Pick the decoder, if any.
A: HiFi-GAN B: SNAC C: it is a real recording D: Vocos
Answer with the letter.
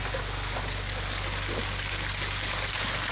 C